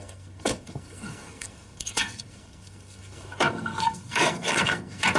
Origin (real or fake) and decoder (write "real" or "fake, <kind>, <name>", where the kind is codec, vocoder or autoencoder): fake, codec, SNAC